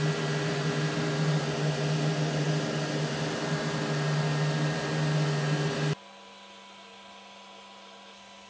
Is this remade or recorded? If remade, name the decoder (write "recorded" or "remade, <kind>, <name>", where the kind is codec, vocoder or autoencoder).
recorded